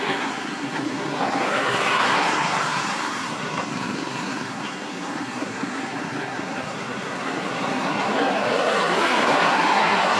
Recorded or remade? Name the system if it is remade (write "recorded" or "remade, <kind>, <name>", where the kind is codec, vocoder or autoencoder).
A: remade, codec, SNAC